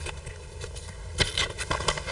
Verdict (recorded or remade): recorded